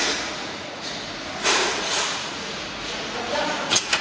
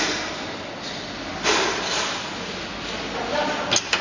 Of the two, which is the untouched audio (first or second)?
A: second